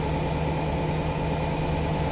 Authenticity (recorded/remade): recorded